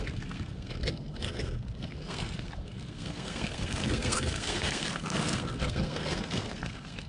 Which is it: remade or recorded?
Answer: remade